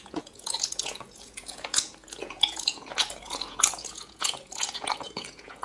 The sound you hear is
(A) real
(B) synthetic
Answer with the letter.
B